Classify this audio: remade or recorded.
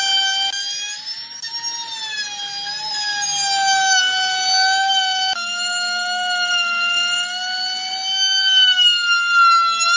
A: recorded